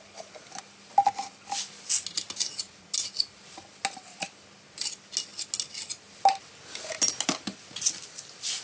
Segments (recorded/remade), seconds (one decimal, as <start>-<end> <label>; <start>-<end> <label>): 0.0-8.6 recorded